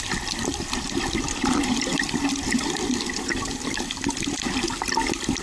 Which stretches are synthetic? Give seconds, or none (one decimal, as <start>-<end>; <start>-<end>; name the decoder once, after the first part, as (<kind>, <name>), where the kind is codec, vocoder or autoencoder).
none